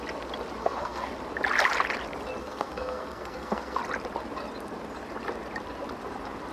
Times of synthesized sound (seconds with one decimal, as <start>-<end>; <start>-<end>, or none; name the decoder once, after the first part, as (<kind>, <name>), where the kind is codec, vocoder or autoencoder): 0.6-1.1 (codec, SNAC); 2.4-3.8